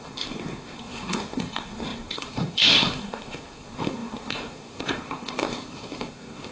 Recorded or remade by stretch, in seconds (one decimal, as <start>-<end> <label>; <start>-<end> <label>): 0.0-6.5 remade